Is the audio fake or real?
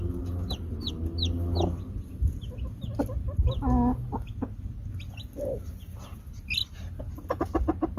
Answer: real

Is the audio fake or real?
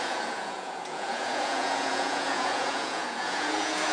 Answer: fake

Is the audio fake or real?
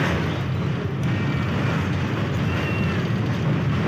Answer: real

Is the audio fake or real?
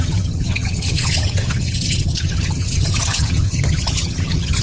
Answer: fake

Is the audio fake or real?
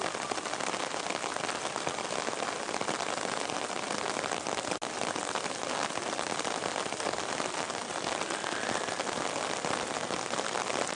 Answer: real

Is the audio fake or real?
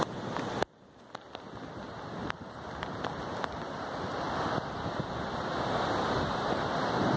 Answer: real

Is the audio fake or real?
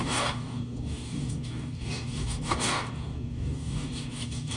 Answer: fake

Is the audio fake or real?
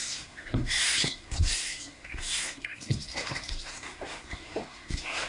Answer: fake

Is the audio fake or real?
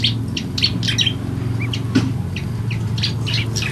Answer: real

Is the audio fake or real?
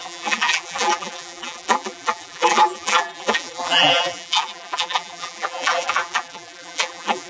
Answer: fake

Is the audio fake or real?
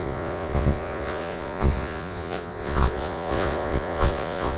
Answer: fake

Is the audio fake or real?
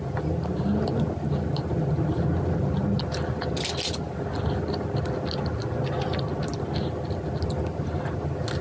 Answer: real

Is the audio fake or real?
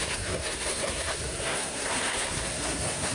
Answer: fake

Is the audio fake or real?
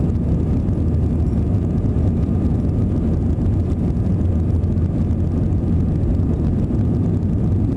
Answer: real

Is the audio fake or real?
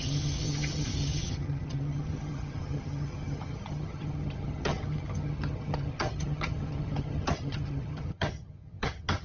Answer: fake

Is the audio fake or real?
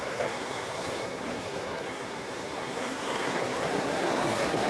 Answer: fake